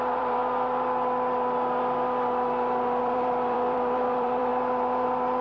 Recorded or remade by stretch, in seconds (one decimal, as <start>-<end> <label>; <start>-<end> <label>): 0.0-0.4 remade; 0.4-3.0 recorded; 3.0-4.5 remade; 4.5-5.4 recorded